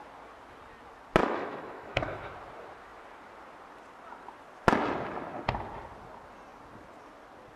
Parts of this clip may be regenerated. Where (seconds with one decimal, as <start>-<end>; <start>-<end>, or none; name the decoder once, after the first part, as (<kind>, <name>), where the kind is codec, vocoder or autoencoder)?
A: 1.2-2.3 (autoencoder, DAC-VAE)